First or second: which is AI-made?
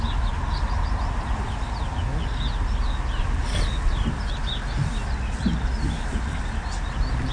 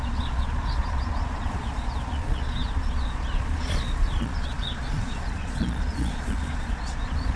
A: second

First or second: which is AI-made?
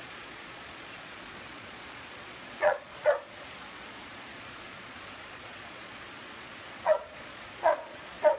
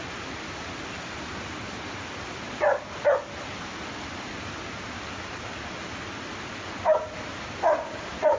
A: first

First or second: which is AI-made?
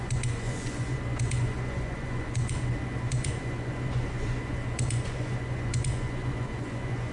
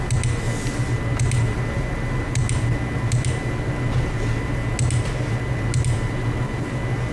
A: first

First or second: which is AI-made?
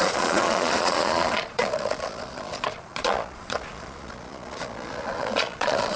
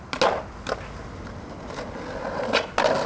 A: first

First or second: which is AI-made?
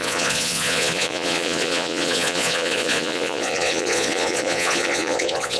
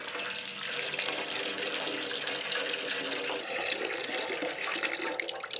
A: first